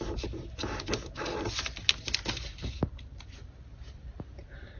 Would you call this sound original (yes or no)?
yes